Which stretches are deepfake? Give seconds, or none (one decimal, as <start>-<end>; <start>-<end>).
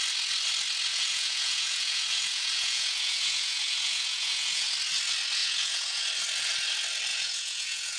0.9-4.7; 5.4-6.0; 7.1-8.0